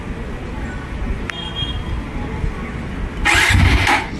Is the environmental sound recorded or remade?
recorded